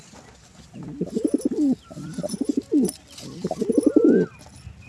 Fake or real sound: real